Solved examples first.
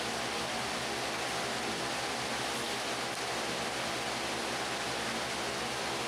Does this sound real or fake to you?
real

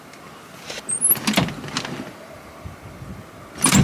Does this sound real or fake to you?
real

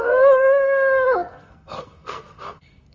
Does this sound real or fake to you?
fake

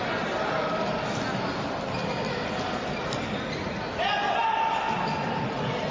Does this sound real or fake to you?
real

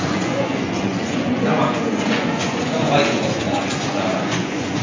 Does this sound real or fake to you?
fake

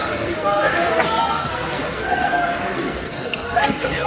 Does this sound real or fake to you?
fake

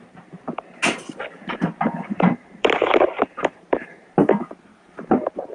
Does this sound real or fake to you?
fake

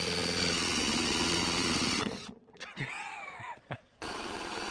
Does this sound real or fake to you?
fake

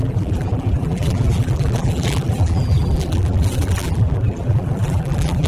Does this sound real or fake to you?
fake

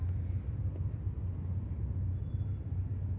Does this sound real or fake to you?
real